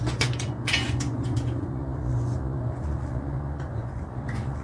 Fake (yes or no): yes